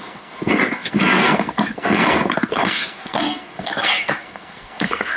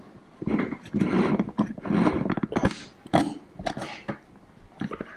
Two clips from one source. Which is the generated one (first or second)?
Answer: first